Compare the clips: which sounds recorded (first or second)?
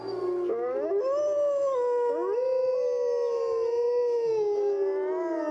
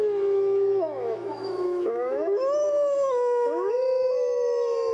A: first